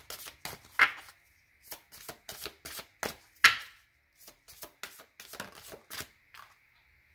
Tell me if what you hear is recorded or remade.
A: recorded